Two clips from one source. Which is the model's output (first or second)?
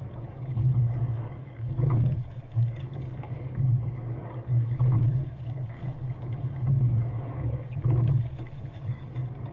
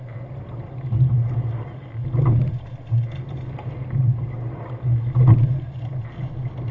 first